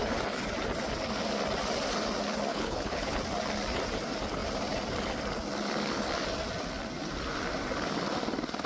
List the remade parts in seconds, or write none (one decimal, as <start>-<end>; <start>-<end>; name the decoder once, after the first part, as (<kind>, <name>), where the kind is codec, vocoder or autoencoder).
2.5-3.2 (codec, HILCodec)

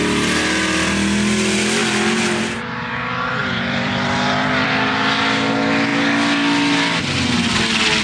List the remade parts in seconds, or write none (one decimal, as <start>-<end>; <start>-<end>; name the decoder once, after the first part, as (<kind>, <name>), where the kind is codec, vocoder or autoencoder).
3.4-4.7 (vocoder, BigVGAN v2)